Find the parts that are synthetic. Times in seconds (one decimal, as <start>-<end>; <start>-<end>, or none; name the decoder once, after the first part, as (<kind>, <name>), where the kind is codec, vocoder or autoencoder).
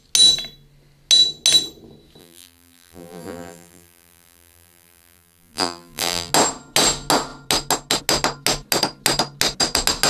2.2-6.3 (vocoder, BigVGAN v2)